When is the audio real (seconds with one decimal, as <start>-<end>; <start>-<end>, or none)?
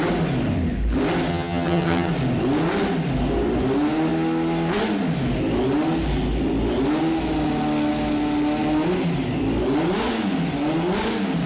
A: 0.0-1.3; 2.1-11.5